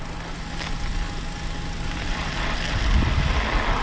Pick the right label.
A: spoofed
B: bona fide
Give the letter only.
B